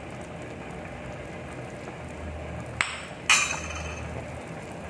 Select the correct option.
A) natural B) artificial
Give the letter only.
A